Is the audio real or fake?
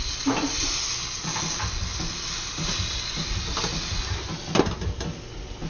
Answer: real